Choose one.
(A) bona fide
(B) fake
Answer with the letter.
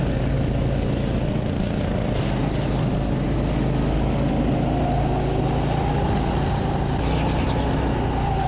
A